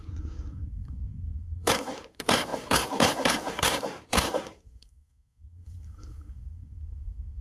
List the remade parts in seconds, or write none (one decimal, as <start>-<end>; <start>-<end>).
0.0-7.4